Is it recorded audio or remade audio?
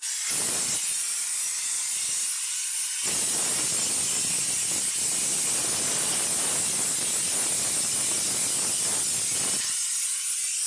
recorded